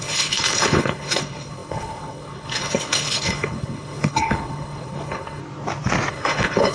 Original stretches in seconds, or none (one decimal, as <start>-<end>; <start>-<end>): 5.4-6.1